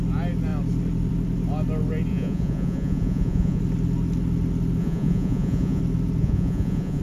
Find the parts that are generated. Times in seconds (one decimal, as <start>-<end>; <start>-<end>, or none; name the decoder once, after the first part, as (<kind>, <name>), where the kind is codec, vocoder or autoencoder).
2.1-3.6 (vocoder, Vocos); 4.8-5.8; 6.2-7.0